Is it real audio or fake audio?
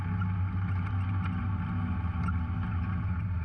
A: real